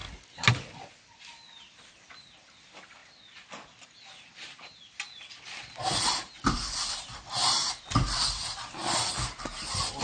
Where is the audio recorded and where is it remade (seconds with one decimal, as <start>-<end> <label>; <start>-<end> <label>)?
0.0-10.0 recorded